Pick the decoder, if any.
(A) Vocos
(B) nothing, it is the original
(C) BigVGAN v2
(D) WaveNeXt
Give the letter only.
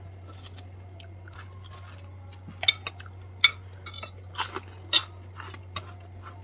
B